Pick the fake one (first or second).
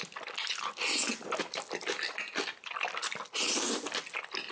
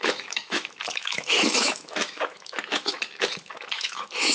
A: second